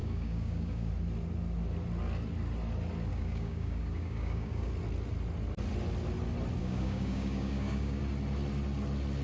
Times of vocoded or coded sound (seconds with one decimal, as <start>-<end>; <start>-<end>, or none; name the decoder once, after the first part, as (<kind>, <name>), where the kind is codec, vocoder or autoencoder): 0.0-0.9 (codec, DAC); 3.1-4.7; 6.6-8.0